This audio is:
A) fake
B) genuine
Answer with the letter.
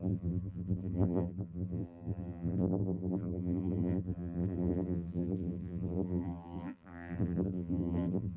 A